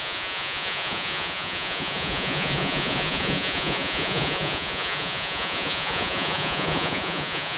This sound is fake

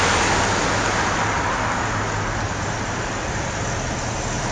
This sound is real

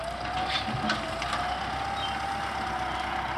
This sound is real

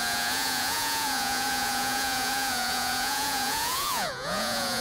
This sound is fake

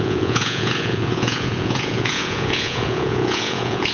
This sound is fake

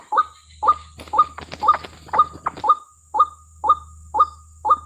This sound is real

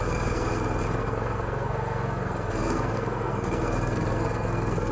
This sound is fake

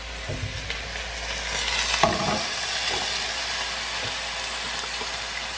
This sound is real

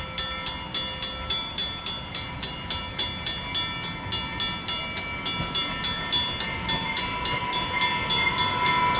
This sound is real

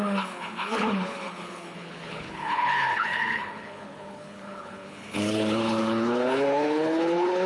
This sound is fake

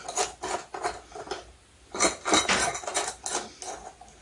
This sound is real